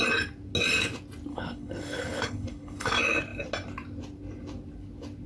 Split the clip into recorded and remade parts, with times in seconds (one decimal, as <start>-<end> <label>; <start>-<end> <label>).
0.0-1.3 recorded; 1.3-2.9 remade; 2.9-5.3 recorded

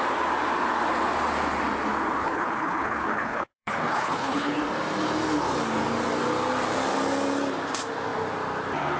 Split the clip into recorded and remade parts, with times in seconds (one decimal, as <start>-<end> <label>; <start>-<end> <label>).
0.0-2.2 recorded; 2.2-4.6 remade; 4.6-9.0 recorded